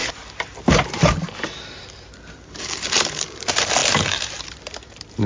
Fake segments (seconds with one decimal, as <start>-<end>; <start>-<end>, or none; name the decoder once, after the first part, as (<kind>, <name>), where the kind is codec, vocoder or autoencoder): 0.0-5.3 (vocoder, BigVGAN v2)